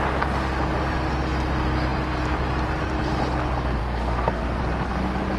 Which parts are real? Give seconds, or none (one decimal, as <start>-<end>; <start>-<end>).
0.0-3.8; 4.6-5.4